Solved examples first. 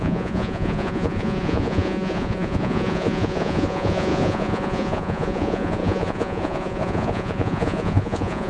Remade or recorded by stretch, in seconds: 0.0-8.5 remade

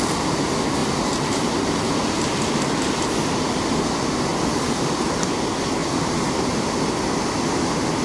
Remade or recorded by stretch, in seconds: 0.0-0.8 recorded; 0.8-1.8 remade; 1.8-4.3 recorded; 4.3-5.3 remade; 5.3-5.8 recorded; 5.8-6.7 remade; 6.7-8.0 recorded

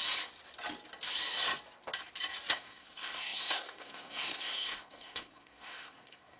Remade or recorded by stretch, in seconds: 0.0-2.5 recorded; 2.5-6.4 remade

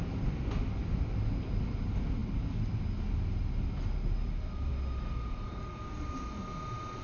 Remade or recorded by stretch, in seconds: 0.0-7.0 recorded

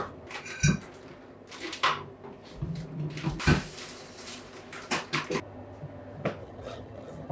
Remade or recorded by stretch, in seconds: 0.0-6.4 recorded; 6.4-7.3 remade

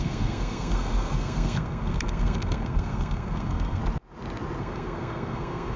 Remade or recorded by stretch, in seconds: 0.0-3.8 remade; 3.8-4.6 recorded; 4.6-5.8 remade

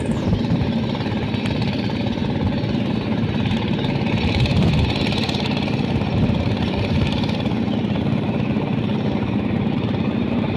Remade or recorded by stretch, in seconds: 0.0-2.2 remade; 2.2-2.9 recorded; 2.9-10.6 remade